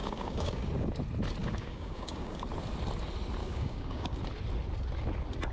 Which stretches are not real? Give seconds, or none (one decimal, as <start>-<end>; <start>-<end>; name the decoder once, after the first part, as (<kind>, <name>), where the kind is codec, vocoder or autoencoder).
0.0-0.7 (codec, DAC); 1.4-2.4; 3.4-4.2